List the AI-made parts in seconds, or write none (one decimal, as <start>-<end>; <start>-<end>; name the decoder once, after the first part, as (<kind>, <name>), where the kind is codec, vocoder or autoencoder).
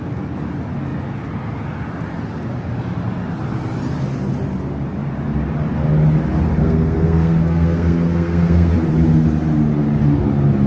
6.6-8.7 (codec, SNAC)